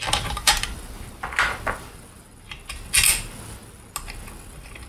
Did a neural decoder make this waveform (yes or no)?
no